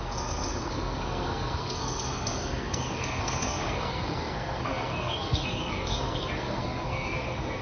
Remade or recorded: remade